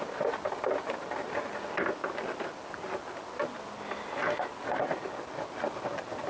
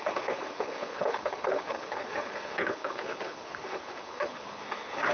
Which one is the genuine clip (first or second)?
first